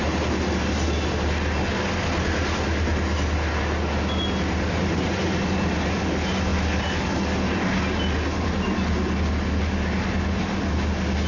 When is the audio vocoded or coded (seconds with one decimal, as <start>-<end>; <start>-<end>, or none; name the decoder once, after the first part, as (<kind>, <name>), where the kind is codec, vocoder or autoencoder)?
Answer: none